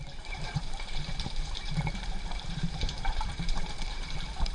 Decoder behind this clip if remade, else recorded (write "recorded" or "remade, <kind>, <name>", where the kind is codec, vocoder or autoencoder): remade, vocoder, BigVGAN v2